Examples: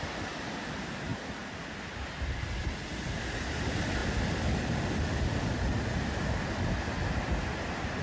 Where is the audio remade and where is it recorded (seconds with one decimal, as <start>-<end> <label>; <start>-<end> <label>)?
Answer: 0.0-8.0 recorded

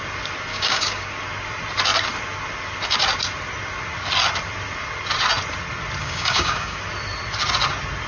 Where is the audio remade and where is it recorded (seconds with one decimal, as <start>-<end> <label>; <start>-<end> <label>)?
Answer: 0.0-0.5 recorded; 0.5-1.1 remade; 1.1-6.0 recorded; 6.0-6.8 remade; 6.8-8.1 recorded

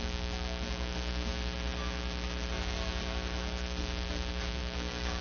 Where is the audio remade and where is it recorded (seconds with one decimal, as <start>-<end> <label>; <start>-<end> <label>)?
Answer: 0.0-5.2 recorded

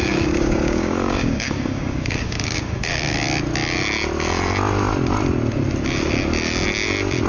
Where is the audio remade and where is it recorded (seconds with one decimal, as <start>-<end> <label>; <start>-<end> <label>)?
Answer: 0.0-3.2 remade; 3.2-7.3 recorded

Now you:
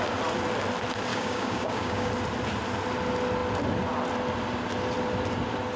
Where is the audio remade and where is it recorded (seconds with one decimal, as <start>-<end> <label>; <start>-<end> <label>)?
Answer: 0.0-1.1 recorded; 1.1-2.1 remade; 2.1-5.8 recorded

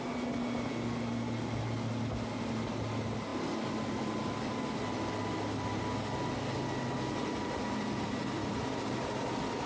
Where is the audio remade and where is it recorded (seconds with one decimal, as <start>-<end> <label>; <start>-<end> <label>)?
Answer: 0.0-9.7 recorded

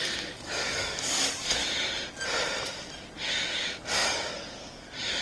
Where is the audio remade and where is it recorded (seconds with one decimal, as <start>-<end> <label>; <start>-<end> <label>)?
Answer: 0.0-1.6 remade; 1.6-3.3 recorded; 3.3-5.2 remade

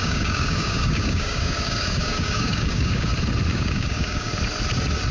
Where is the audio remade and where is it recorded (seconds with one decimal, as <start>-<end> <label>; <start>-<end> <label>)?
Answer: 0.0-3.1 remade; 3.1-3.5 recorded; 3.5-4.3 remade; 4.3-5.1 recorded